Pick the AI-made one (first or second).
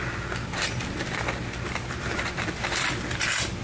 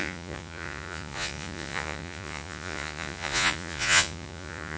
second